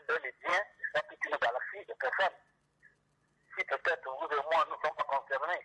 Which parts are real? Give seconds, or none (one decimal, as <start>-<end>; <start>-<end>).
0.0-0.5; 1.0-3.8; 5.0-5.6